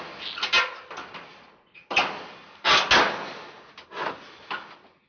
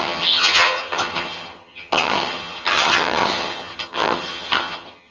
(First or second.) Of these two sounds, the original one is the first